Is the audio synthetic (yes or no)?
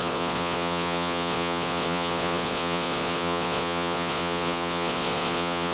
yes